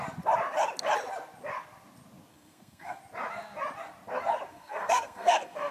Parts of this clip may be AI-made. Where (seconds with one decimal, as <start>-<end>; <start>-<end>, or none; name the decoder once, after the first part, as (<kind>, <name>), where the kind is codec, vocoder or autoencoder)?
2.3-3.0 (codec, SNAC); 4.5-5.7